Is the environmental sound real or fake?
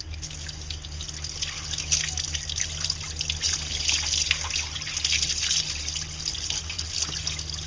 real